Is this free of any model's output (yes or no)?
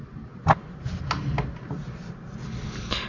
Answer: yes